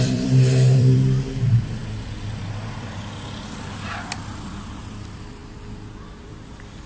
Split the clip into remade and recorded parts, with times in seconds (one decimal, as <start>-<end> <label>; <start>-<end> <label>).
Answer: 0.0-1.8 remade; 1.8-4.8 recorded; 4.8-5.4 remade; 5.4-6.1 recorded; 6.1-6.9 remade